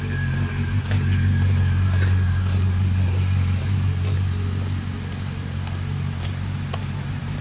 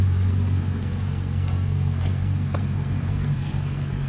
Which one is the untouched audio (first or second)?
first